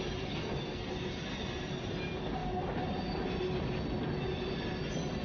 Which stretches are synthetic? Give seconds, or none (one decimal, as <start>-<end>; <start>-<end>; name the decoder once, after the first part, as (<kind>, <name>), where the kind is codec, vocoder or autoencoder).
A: 0.4-0.9 (codec, SNAC)